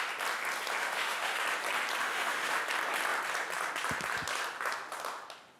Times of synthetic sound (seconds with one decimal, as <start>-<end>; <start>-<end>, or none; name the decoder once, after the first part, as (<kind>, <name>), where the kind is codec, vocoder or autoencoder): 0.8-1.4 (autoencoder, DAC-VAE); 2.0-2.6